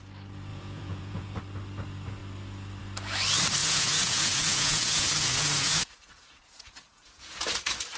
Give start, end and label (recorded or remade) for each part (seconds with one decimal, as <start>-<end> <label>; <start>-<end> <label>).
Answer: 0.0-0.5 recorded; 0.5-1.4 remade; 1.4-3.6 recorded; 3.6-7.4 remade; 7.4-8.0 recorded

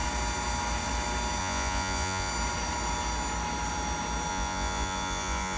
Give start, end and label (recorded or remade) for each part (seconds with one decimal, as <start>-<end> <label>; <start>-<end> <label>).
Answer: 0.0-1.4 recorded; 1.4-2.3 remade; 2.3-4.3 recorded; 4.3-5.6 remade

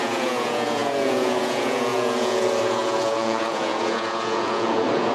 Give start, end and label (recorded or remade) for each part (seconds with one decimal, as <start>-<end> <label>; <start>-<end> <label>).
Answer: 0.0-5.1 remade